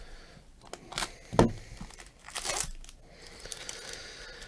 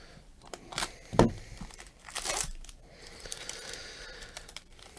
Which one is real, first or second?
first